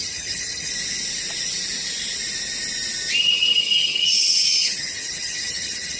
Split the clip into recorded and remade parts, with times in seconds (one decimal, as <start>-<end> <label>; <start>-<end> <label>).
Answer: 0.0-0.7 remade; 0.7-3.2 recorded; 3.2-6.0 remade